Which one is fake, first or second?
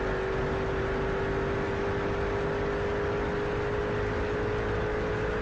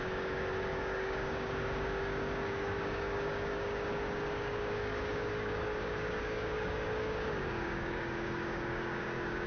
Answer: second